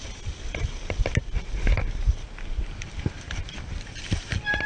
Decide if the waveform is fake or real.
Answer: real